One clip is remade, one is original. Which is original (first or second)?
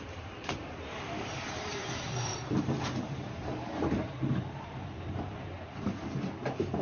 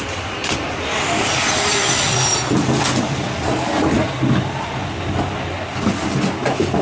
second